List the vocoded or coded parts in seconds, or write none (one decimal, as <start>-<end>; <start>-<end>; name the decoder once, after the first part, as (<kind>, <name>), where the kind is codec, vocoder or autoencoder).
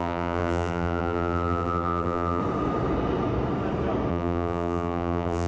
0.0-2.4 (vocoder, BigVGAN v2); 4.1-5.5